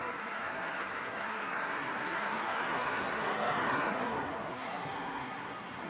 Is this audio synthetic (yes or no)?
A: yes